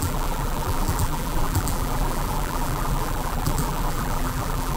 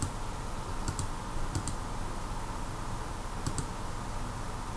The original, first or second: second